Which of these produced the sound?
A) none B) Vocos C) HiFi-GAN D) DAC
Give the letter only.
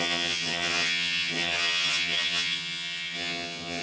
C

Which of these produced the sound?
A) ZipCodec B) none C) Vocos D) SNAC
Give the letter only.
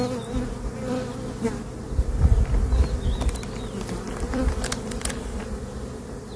B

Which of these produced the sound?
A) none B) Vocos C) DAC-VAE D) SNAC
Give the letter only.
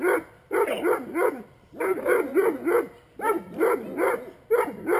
A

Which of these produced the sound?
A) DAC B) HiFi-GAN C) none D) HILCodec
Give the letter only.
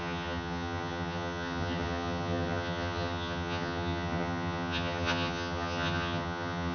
B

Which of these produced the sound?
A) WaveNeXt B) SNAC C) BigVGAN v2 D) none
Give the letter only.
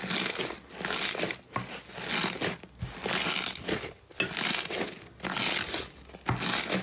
D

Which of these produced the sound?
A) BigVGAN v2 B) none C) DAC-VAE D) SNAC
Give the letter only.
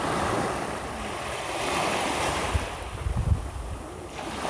A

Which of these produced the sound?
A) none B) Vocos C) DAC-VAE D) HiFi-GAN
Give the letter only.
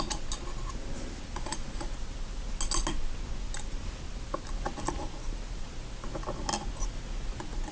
A